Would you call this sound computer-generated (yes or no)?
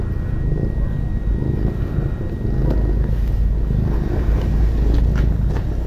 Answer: no